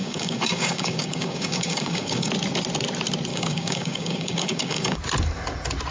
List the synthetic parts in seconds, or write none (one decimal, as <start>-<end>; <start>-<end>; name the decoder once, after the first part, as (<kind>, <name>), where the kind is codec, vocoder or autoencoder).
0.0-2.3 (codec, DAC); 3.3-5.0